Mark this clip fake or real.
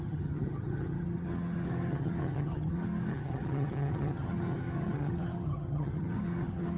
fake